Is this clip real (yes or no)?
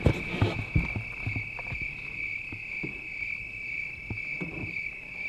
yes